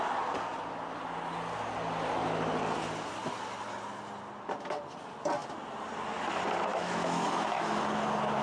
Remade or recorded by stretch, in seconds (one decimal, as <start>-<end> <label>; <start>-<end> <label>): 0.0-6.7 recorded; 6.7-7.7 remade; 7.7-8.4 recorded